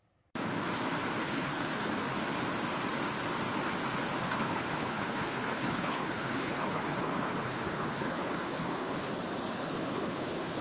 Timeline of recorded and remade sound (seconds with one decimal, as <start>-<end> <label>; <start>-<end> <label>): 0.0-1.2 recorded; 1.2-1.9 remade; 1.9-4.2 recorded; 4.2-9.1 remade; 9.1-9.5 recorded; 9.5-10.6 remade